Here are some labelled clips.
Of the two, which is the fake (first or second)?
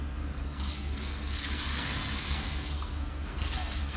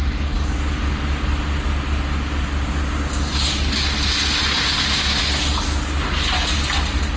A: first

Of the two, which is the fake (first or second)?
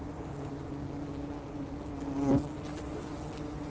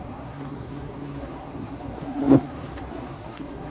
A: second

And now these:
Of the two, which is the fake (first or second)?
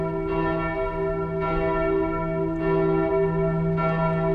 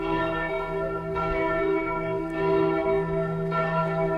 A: second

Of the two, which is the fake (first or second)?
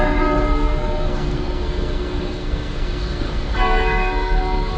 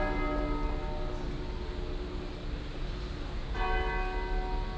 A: first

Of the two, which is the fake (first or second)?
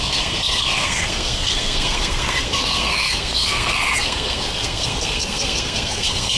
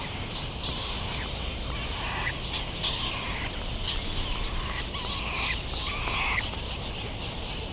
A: first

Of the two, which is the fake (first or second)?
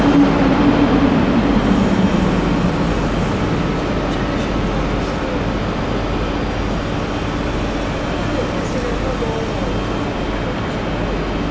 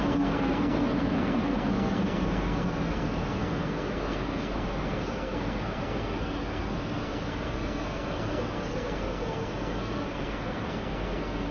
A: second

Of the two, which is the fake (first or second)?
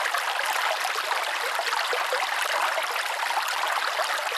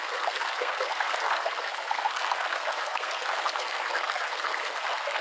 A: second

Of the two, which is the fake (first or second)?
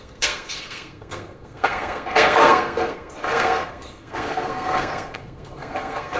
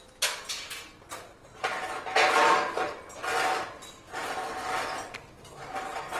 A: first